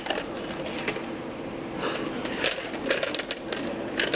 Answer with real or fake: real